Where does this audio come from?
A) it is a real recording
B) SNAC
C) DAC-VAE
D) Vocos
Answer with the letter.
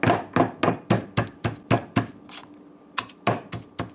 A